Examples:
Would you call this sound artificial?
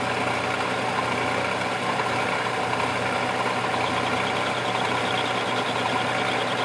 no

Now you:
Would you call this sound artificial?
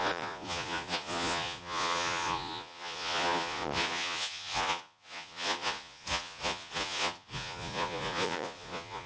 yes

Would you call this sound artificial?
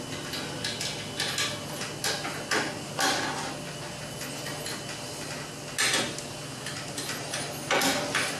no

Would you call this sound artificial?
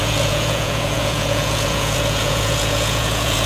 yes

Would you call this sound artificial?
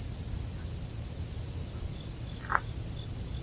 no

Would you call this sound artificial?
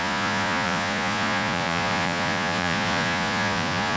yes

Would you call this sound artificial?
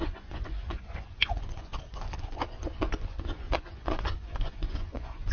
yes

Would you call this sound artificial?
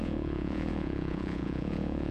yes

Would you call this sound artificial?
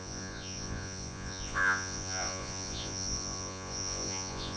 yes